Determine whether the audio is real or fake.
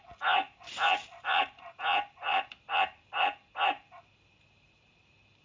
real